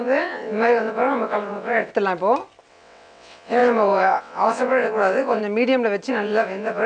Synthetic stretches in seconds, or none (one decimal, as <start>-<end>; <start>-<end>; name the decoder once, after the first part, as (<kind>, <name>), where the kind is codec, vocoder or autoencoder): 0.0-1.9 (vocoder, WaveNeXt); 2.7-5.4; 6.1-6.9